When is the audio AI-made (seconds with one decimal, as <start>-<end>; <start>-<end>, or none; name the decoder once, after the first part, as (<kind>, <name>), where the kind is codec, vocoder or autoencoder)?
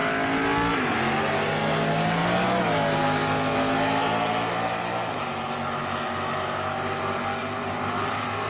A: 7.4-8.5 (vocoder, BigVGAN v2)